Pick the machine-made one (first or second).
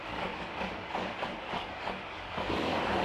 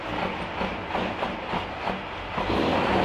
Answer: first